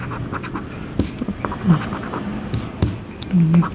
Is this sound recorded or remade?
recorded